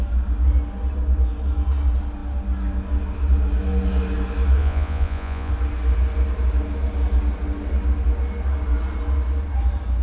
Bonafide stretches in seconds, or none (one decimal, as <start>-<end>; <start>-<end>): 0.0-4.6; 5.5-10.0